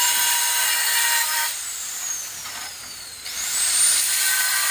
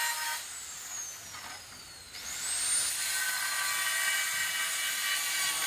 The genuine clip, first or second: second